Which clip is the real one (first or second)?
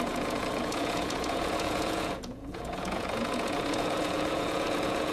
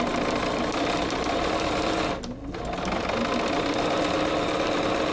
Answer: second